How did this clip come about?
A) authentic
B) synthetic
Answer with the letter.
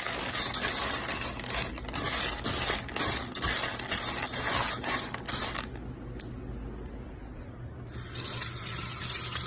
A